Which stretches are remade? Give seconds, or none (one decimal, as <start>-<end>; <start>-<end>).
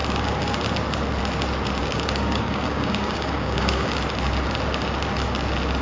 1.8-3.9